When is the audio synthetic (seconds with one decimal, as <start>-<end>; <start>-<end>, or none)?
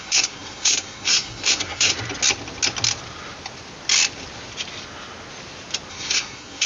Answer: 0.0-1.9; 5.9-6.7